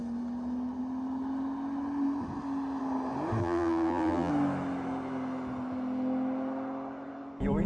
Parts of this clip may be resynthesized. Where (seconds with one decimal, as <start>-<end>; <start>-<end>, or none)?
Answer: 3.4-4.3